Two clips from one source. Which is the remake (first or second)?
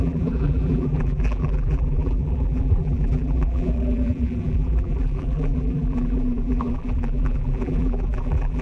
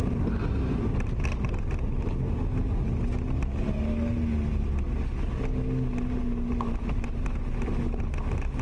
first